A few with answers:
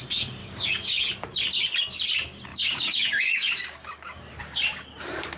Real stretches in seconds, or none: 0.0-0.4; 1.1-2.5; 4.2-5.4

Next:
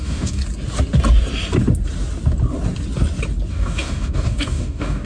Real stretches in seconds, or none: 0.4-3.5

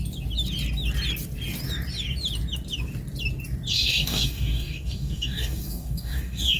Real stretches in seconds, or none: 0.0-3.7